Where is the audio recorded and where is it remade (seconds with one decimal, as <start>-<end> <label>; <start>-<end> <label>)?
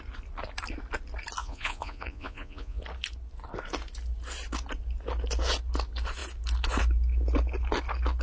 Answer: 0.0-1.4 recorded; 1.4-2.8 remade; 2.8-8.2 recorded